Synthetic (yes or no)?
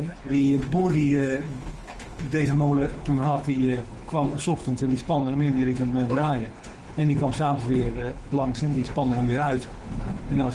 yes